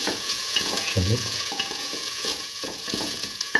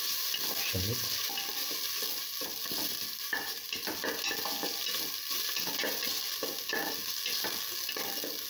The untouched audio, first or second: second